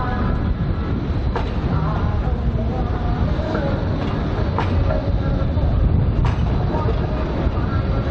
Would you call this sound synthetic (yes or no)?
no